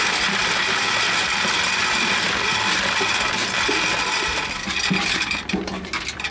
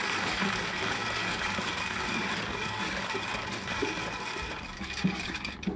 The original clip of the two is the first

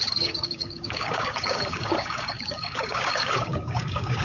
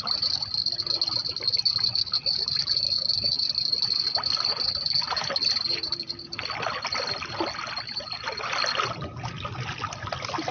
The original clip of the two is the second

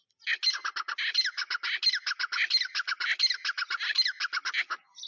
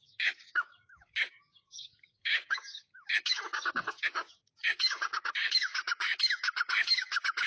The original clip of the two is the first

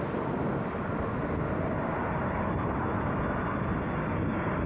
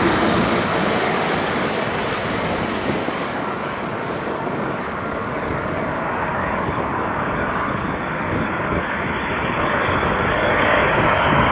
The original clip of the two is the first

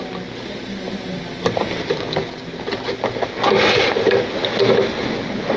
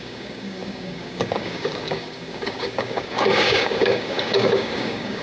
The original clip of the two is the first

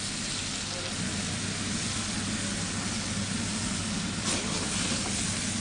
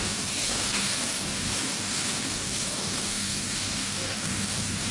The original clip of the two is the first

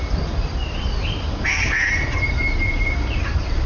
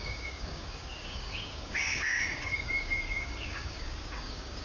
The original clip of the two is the first